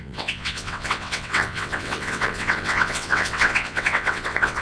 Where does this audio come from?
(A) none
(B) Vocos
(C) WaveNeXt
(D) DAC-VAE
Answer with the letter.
C